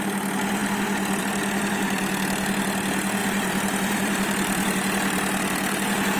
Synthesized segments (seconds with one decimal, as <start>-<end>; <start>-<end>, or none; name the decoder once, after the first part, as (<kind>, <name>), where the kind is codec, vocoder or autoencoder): 3.2-6.2 (vocoder, BigVGAN v2)